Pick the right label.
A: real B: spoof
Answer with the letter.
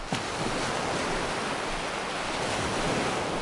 A